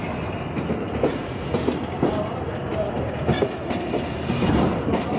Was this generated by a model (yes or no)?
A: no